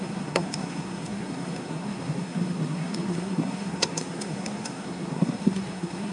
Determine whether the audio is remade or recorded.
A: remade